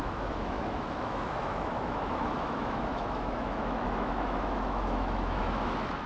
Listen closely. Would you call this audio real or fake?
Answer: fake